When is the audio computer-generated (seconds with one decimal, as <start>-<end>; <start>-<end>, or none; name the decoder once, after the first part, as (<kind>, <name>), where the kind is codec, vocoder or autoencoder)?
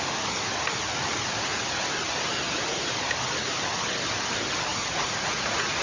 4.7-5.8 (vocoder, Vocos)